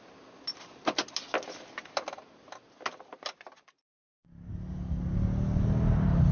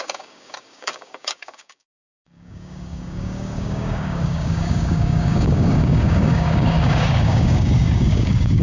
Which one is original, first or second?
first